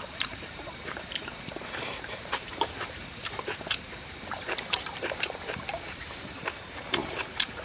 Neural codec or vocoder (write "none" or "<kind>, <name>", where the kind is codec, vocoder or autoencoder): vocoder, BigVGAN v2